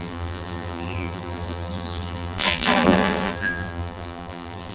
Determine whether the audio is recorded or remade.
remade